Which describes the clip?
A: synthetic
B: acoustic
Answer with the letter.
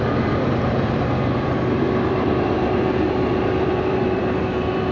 A